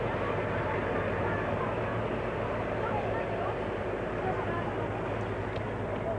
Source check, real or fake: real